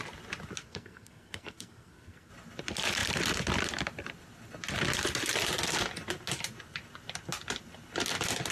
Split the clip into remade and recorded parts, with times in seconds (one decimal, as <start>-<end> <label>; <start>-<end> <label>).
0.0-0.6 recorded; 0.6-2.3 remade; 2.3-8.5 recorded